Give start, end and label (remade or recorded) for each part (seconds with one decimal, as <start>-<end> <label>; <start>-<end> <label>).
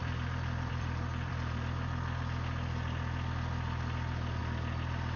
0.0-1.3 remade; 1.3-5.2 recorded